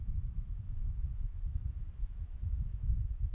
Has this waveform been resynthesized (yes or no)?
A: yes